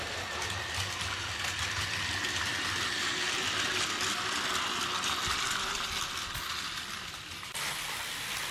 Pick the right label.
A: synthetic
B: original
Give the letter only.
B